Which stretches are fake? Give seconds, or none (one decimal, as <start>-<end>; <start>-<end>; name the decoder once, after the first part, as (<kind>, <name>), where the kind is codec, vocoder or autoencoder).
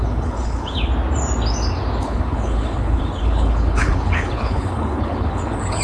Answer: 0.0-0.9 (codec, HILCodec); 2.0-5.8